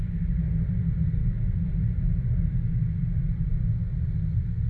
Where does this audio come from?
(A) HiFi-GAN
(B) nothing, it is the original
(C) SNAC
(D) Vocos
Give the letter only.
B